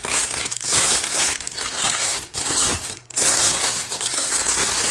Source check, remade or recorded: remade